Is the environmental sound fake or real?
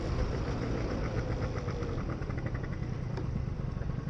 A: real